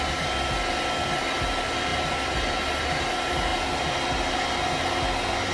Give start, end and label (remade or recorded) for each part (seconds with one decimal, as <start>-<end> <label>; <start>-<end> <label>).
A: 0.0-5.5 recorded